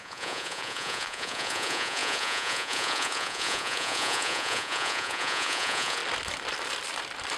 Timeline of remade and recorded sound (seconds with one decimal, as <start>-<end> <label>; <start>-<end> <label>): 0.0-6.0 remade; 6.0-7.4 recorded